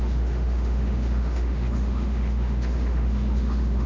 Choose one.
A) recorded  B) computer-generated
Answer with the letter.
B